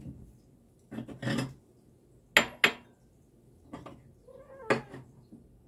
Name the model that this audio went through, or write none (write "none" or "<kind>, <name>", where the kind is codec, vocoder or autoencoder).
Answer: none